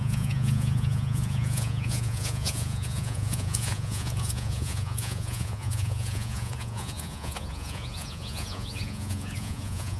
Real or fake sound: fake